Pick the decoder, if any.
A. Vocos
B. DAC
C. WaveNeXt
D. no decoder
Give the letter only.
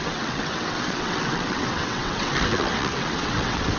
C